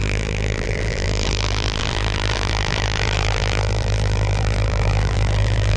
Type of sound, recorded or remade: remade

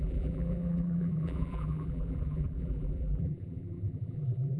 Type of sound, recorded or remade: remade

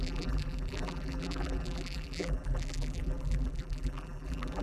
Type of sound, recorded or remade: remade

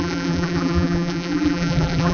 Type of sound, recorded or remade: remade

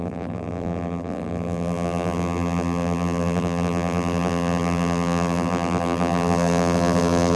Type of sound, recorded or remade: remade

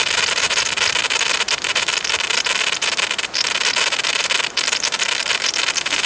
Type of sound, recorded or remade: remade